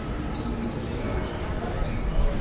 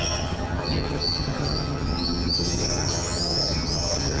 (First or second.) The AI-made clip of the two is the second